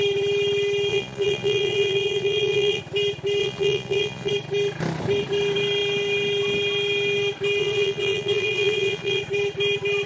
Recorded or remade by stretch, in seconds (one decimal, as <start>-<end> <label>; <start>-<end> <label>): 0.0-0.9 recorded; 0.9-2.8 remade; 2.8-3.4 recorded; 3.4-4.3 remade; 4.3-7.6 recorded; 7.6-9.2 remade; 9.2-10.1 recorded